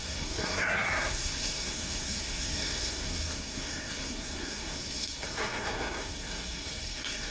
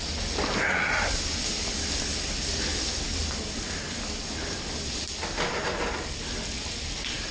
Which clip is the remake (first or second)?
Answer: first